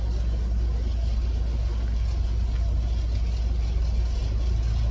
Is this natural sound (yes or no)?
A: yes